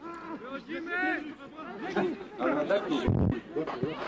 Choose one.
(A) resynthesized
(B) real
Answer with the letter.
B